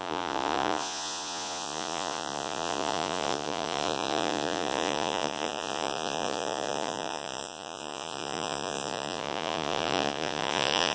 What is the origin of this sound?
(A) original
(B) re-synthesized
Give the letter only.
B